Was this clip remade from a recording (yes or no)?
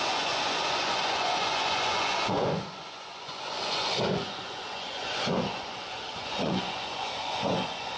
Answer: yes